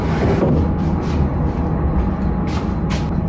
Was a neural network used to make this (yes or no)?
no